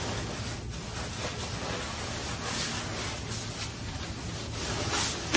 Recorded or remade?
recorded